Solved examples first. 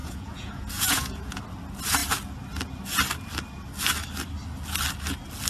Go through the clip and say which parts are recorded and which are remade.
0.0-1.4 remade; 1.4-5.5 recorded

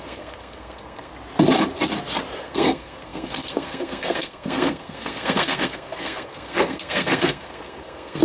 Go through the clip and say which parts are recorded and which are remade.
0.0-1.1 remade; 1.1-2.4 recorded; 2.4-8.2 remade

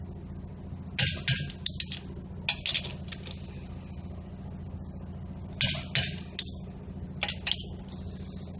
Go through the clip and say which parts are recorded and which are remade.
0.0-8.6 recorded

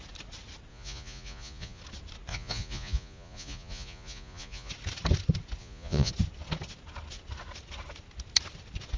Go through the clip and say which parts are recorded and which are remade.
0.0-0.7 recorded; 0.7-1.8 remade; 1.8-2.3 recorded; 2.3-4.7 remade; 4.7-5.6 recorded; 5.6-6.1 remade; 6.1-9.0 recorded

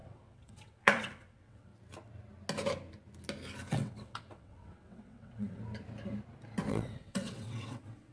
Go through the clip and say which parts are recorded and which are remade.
0.0-1.7 remade; 1.7-3.7 recorded; 3.7-5.6 remade; 5.6-6.7 recorded; 6.7-8.1 remade